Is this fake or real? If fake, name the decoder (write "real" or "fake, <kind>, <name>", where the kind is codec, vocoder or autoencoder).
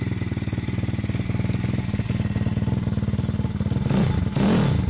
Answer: real